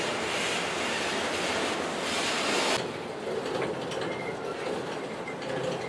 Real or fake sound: real